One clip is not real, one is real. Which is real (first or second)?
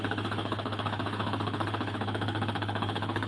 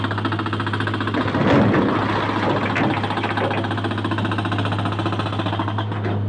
second